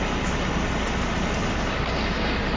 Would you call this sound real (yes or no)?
yes